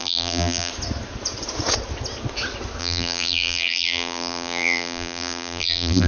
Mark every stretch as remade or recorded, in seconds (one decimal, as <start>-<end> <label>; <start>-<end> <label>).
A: 0.0-0.7 remade; 0.7-2.8 recorded; 2.8-6.1 remade